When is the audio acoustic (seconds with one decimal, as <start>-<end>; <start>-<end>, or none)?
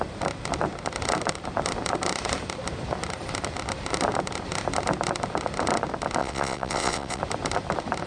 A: 0.0-6.2; 7.2-8.1